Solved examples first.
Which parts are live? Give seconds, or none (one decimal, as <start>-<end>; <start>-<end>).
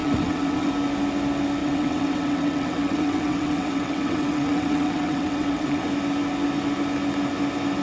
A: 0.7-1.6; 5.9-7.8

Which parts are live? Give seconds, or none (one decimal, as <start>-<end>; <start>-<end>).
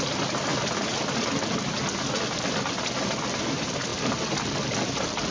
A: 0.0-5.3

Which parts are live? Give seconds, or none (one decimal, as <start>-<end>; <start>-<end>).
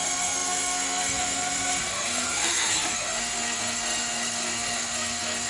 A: none